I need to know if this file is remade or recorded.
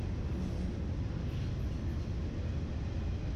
recorded